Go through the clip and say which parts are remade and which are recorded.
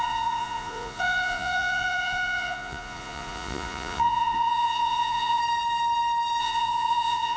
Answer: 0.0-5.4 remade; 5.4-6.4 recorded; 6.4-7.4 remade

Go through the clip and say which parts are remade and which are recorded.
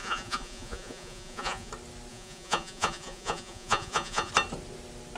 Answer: 0.0-1.7 remade; 1.7-2.1 recorded; 2.1-4.3 remade; 4.3-5.2 recorded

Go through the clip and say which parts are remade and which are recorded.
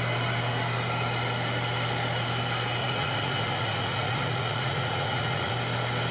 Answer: 0.0-2.8 recorded; 2.8-5.5 remade; 5.5-6.1 recorded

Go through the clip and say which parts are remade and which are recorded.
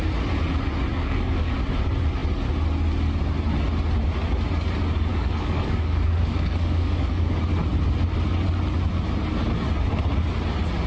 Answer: 0.0-0.9 recorded; 0.9-1.5 remade; 1.5-5.1 recorded; 5.1-7.4 remade; 7.4-10.9 recorded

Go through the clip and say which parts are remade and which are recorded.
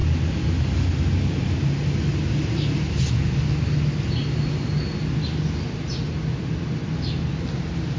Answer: 0.0-8.0 recorded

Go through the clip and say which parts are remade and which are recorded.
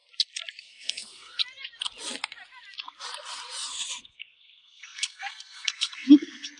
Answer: 0.0-0.6 recorded; 0.6-1.4 remade; 1.4-4.0 recorded; 4.0-6.6 remade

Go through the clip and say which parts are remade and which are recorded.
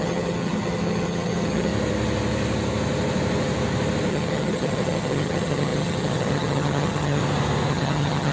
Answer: 0.0-1.7 remade; 1.7-4.1 recorded; 4.1-7.2 remade; 7.2-7.7 recorded; 7.7-8.3 remade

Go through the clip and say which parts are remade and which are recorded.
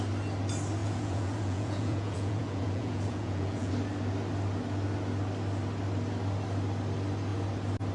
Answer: 0.0-0.8 recorded; 0.8-3.7 remade; 3.7-7.9 recorded